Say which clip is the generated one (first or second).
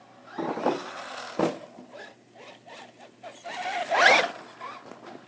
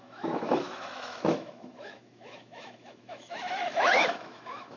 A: second